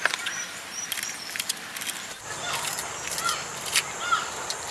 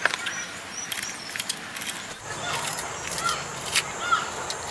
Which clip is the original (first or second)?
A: second